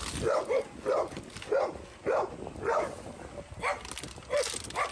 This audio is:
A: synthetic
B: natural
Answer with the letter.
B